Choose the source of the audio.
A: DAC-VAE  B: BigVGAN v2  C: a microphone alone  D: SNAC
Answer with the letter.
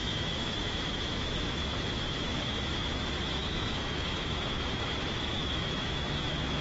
A